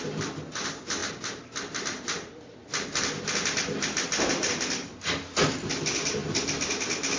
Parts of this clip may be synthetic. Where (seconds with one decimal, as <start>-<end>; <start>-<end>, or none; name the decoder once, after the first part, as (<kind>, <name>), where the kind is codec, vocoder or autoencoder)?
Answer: none